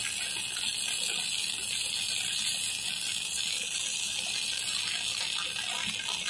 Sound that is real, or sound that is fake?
real